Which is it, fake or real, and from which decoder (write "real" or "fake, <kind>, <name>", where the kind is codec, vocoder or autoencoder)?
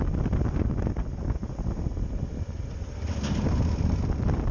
real